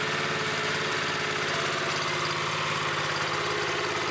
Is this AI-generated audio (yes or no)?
no